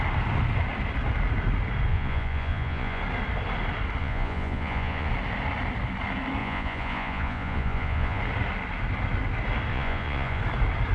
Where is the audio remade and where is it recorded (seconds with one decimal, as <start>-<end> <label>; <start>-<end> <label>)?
0.0-1.9 recorded; 1.9-3.0 remade; 3.0-4.0 recorded; 4.0-5.1 remade; 5.1-6.4 recorded; 6.4-8.2 remade; 8.2-9.7 recorded; 9.7-10.4 remade; 10.4-10.9 recorded